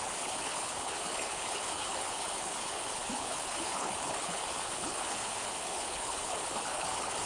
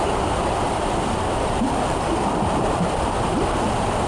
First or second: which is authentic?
second